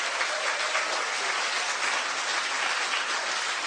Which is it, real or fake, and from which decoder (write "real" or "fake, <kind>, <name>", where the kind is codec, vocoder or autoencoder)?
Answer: real